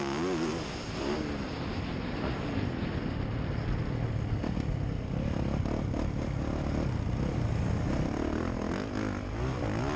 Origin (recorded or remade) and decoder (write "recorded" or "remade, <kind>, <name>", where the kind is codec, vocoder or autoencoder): recorded